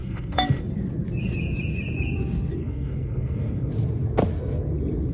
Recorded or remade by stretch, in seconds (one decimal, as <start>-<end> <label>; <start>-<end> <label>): 0.0-0.6 remade; 0.6-2.6 recorded; 2.6-3.7 remade; 3.7-5.1 recorded